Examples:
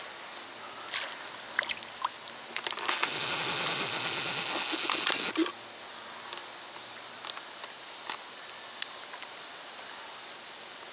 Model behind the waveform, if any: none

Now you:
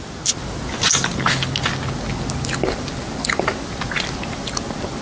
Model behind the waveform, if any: none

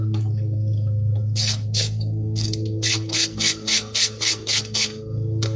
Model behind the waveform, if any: codec, SNAC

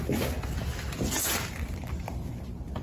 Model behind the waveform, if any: none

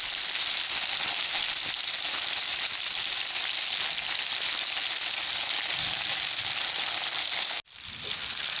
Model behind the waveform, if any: none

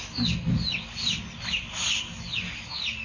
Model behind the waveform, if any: none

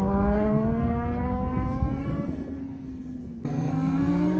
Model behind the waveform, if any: codec, SNAC